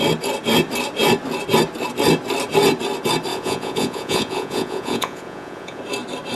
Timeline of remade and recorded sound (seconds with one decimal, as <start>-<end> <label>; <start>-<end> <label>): 0.0-3.3 recorded; 3.3-5.8 remade; 5.8-6.3 recorded